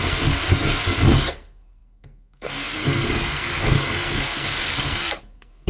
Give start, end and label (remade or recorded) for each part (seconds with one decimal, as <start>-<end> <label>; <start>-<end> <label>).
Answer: 0.0-5.7 remade